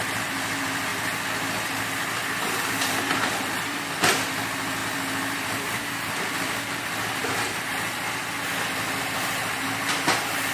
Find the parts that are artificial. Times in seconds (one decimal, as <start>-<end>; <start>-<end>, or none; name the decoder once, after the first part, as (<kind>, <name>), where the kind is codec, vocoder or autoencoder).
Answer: 0.0-0.9 (vocoder, BigVGAN v2); 2.4-7.2; 7.9-10.5

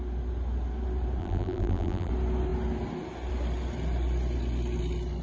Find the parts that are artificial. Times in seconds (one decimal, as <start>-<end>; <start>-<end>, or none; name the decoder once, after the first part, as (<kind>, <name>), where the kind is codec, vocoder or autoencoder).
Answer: 1.2-2.1 (vocoder, BigVGAN v2)

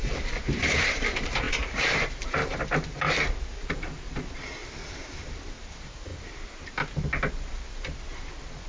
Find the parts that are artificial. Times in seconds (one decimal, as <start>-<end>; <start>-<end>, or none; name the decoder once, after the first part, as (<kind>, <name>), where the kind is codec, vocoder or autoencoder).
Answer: 0.0-2.4 (vocoder, BigVGAN v2); 3.4-4.6; 5.6-6.1

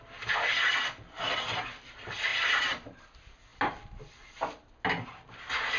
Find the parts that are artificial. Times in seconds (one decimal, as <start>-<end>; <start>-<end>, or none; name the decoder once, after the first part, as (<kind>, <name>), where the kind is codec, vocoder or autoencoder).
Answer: 2.3-3.0 (vocoder, BigVGAN v2)

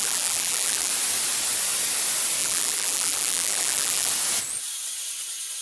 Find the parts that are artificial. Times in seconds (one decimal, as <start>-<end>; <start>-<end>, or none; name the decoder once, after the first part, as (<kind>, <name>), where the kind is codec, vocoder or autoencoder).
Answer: 0.0-0.9 (vocoder, BigVGAN v2); 2.4-4.1